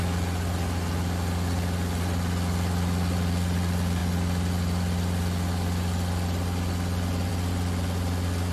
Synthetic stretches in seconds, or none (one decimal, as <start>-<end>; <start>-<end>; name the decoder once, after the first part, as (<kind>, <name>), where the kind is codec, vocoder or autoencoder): none